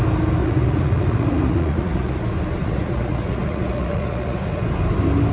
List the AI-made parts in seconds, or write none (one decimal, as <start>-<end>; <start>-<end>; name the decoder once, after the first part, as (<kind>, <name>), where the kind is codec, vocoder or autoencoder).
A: 0.4-2.2 (vocoder, Vocos); 2.6-4.6